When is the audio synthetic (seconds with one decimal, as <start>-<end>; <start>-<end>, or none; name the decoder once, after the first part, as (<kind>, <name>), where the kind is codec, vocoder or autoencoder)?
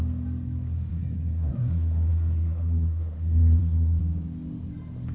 0.9-4.0 (codec, SNAC)